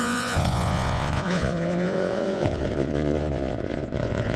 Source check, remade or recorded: remade